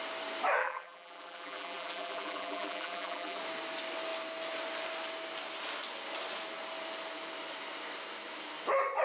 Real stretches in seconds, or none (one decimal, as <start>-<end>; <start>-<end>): 0.0-0.6; 3.4-9.0